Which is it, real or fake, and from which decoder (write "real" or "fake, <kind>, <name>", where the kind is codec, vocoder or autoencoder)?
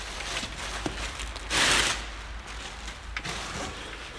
real